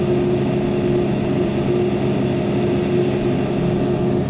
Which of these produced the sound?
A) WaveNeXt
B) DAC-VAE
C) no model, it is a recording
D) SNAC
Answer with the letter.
C